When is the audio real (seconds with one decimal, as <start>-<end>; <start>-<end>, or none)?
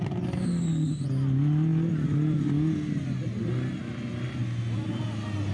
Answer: 0.0-5.5